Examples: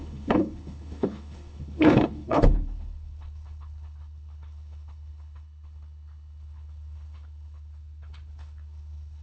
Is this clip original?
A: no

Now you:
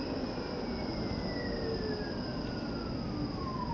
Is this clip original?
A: yes